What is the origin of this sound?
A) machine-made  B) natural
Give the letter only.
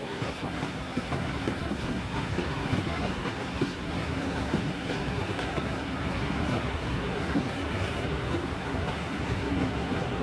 A